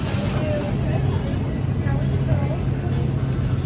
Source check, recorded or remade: recorded